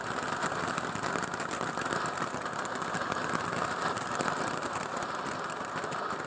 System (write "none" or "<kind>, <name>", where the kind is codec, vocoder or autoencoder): none